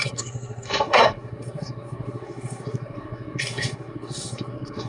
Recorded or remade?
remade